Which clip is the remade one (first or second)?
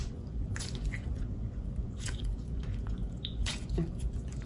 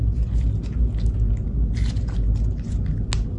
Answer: first